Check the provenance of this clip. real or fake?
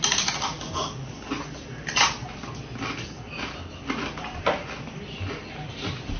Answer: real